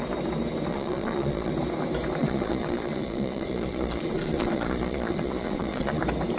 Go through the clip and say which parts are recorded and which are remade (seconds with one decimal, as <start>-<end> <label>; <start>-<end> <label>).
0.0-0.7 recorded; 0.7-1.5 remade; 1.5-2.2 recorded; 2.2-6.0 remade; 6.0-6.4 recorded